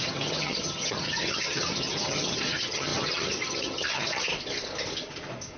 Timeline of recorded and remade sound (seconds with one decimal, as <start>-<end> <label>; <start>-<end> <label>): 0.0-4.3 remade; 4.3-5.6 recorded

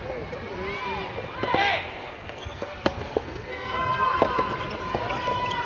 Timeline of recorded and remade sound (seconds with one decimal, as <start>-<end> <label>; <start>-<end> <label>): 0.0-1.5 recorded; 1.5-3.9 remade; 3.9-5.7 recorded

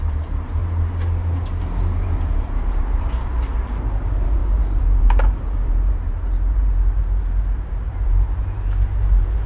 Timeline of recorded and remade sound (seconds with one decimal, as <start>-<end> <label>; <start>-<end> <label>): 0.0-0.6 remade; 0.6-1.6 recorded; 1.6-9.5 remade

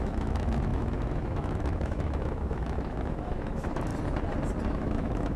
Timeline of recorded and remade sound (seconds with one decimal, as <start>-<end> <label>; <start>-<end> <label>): 0.0-3.9 remade; 3.9-4.7 recorded; 4.7-5.4 remade

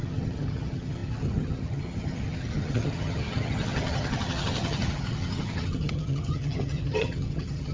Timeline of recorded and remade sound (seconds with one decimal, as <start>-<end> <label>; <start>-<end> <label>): 0.0-7.7 remade